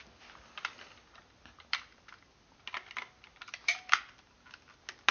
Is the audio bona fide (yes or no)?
yes